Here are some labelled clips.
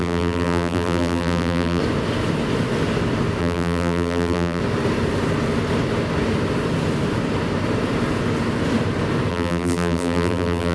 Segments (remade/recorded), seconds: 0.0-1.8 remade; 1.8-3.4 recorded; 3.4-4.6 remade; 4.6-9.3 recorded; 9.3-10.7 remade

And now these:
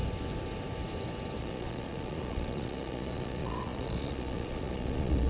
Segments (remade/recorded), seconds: 0.0-1.4 recorded; 1.4-5.3 remade

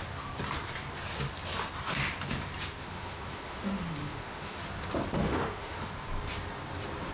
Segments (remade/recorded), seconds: 0.0-2.8 recorded; 2.8-4.6 remade; 4.6-5.2 recorded; 5.2-5.9 remade; 5.9-7.1 recorded

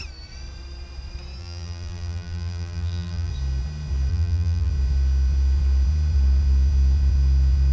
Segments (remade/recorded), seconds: 0.0-1.4 recorded; 1.4-3.3 remade; 3.3-4.1 recorded; 4.1-4.7 remade; 4.7-7.7 recorded

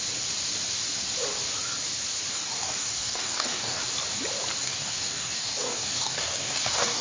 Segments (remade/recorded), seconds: 0.0-2.3 recorded; 2.3-3.8 remade; 3.8-4.6 recorded; 4.6-7.0 remade

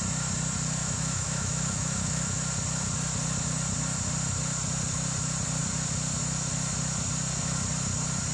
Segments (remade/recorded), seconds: 0.0-0.8 recorded; 0.8-2.4 remade; 2.4-8.3 recorded